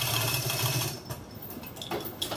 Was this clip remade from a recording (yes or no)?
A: no